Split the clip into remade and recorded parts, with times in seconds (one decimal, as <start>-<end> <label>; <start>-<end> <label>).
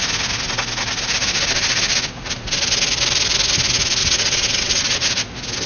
0.0-4.0 recorded; 4.0-5.1 remade; 5.1-5.7 recorded